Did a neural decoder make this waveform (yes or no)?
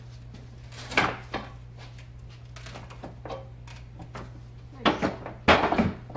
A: no